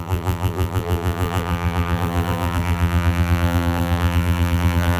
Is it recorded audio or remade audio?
remade